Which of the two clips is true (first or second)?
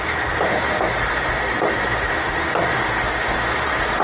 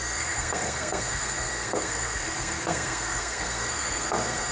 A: first